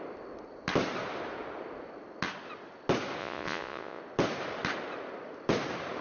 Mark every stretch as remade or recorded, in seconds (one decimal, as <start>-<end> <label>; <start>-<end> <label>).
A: 0.0-3.2 recorded; 3.2-4.0 remade; 4.0-6.0 recorded